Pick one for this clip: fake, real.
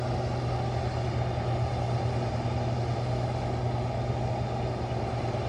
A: real